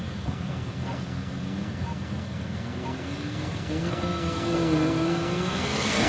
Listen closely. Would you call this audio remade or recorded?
remade